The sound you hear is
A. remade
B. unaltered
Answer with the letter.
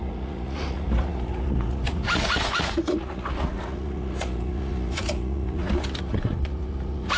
A